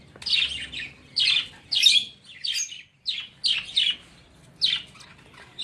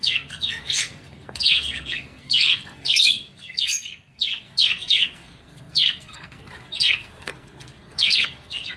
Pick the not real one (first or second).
second